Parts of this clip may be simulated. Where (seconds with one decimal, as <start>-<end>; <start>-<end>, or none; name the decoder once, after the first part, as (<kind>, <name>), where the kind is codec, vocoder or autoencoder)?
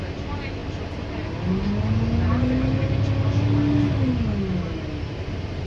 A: none